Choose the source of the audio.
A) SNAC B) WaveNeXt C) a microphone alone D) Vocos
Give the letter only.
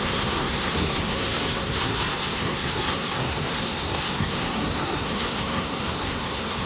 A